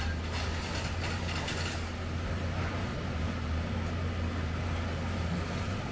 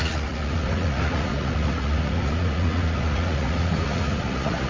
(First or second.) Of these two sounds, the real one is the first